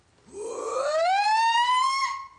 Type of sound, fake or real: real